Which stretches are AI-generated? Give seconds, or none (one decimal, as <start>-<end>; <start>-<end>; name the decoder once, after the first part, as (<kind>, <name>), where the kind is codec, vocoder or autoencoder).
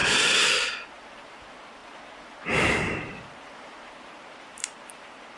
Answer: 0.0-5.4 (vocoder, BigVGAN v2)